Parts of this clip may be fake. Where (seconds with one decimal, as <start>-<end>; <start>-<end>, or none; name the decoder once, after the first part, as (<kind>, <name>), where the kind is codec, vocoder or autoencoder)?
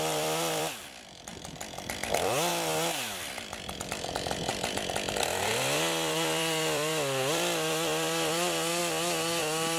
0.0-4.5 (vocoder, BigVGAN v2); 5.4-8.8; 9.4-9.8